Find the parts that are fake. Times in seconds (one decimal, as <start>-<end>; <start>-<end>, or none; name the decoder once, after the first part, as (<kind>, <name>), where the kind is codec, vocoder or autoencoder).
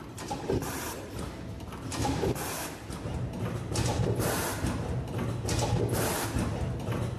4.5-5.1 (vocoder, BigVGAN v2)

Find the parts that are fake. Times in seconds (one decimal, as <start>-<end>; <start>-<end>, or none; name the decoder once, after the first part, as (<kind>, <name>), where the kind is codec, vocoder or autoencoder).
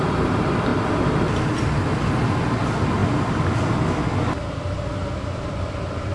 none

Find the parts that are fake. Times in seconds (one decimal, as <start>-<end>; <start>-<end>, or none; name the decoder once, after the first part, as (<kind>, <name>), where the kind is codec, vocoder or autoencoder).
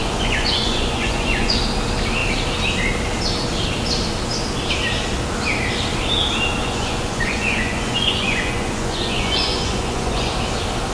0.0-1.6 (vocoder, Vocos); 6.6-10.3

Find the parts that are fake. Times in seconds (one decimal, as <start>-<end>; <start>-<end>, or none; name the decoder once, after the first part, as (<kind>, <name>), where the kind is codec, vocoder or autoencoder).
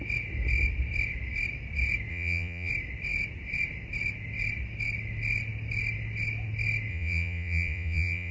2.1-2.7 (vocoder, Vocos); 6.9-8.3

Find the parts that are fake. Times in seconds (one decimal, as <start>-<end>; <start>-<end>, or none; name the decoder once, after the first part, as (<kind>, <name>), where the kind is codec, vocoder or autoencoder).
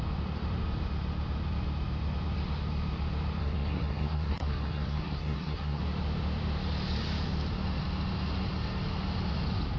3.4-5.8 (codec, SNAC)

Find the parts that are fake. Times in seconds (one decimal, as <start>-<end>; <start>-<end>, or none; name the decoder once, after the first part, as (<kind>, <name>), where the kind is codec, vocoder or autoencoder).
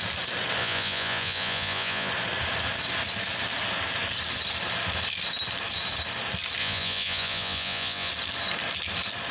0.6-2.1 (vocoder, Vocos); 6.6-8.1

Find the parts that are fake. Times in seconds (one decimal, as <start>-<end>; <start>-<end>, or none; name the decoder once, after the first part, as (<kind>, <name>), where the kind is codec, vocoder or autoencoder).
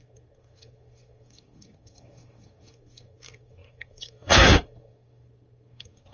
0.0-6.1 (codec, SNAC)